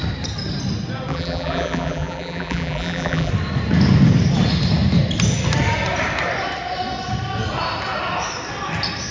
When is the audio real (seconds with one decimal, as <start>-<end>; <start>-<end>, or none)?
0.0-1.1; 3.3-9.1